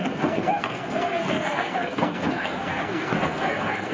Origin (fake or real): fake